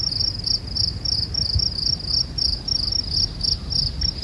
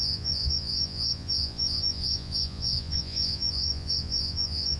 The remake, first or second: second